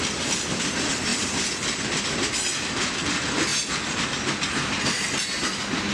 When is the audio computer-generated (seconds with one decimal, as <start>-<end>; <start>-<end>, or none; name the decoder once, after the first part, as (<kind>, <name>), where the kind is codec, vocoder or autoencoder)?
none